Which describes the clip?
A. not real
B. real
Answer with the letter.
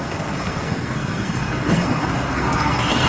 A